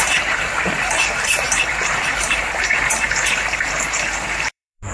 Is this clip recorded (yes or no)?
no